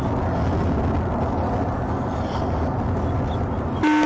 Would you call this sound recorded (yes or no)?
yes